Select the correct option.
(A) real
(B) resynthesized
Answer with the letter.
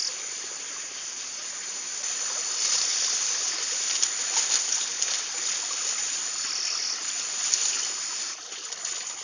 A